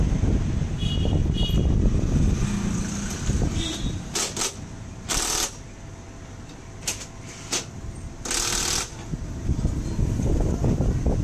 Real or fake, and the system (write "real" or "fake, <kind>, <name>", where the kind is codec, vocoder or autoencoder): real